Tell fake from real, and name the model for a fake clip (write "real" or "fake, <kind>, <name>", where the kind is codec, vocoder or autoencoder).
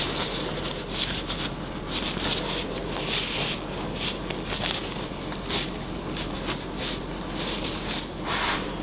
real